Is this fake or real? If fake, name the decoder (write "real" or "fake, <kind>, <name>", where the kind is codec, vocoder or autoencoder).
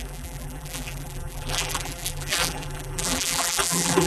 fake, vocoder, BigVGAN v2